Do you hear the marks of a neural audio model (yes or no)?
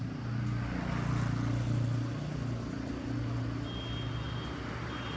no